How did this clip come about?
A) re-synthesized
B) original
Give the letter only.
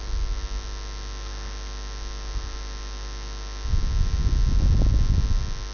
B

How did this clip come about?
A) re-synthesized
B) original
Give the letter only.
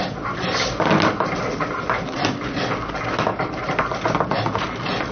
B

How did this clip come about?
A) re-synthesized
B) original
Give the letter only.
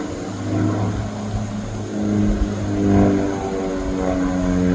B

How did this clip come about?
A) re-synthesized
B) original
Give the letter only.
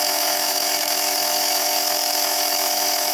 A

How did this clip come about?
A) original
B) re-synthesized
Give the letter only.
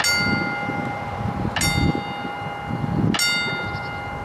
A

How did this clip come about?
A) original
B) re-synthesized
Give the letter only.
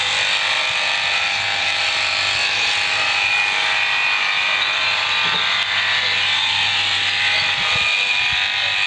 A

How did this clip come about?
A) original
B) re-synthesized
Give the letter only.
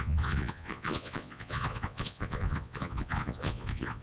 B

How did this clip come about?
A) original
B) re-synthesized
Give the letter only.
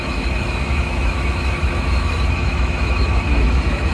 B